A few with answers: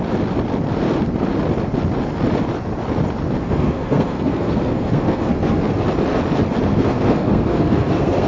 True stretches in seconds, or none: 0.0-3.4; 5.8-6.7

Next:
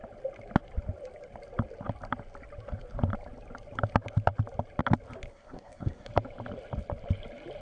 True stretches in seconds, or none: 0.0-5.3; 6.1-7.6

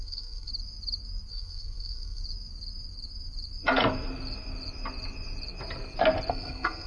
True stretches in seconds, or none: 0.5-1.3; 2.2-6.3

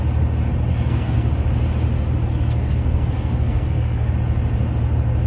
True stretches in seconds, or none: 0.0-0.7; 1.3-2.3; 4.1-5.3

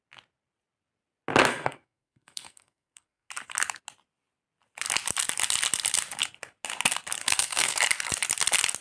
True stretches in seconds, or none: 0.0-1.5; 3.3-7.2; 7.8-8.8